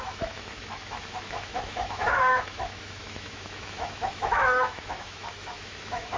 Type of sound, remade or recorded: remade